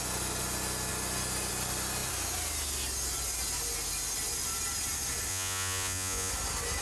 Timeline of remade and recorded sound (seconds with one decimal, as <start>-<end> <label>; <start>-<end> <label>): 0.0-5.3 recorded; 5.3-6.3 remade; 6.3-6.8 recorded